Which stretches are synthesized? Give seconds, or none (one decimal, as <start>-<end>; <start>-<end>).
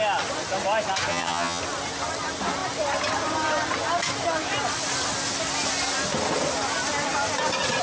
1.1-1.6